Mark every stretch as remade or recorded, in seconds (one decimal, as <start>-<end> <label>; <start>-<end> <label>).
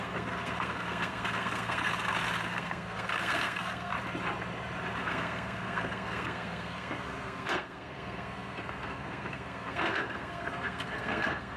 0.0-1.9 remade; 1.9-2.5 recorded; 2.5-3.9 remade; 3.9-5.0 recorded; 5.0-11.6 remade